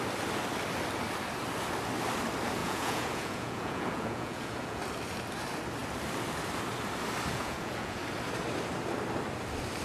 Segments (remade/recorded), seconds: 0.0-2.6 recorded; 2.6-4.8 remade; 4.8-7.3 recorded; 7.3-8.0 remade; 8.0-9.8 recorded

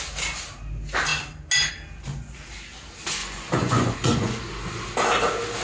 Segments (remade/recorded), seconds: 0.0-3.2 recorded; 3.2-4.4 remade; 4.4-5.6 recorded

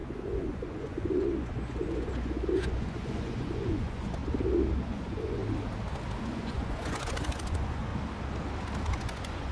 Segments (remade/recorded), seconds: 0.0-4.2 remade; 4.2-4.9 recorded; 4.9-5.4 remade; 5.4-6.2 recorded; 6.2-7.9 remade; 7.9-8.8 recorded; 8.8-9.5 remade